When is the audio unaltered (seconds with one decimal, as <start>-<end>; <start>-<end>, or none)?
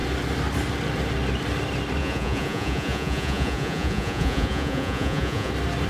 0.0-2.0; 5.5-5.9